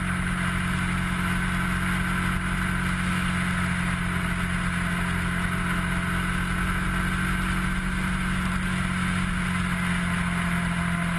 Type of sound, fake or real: real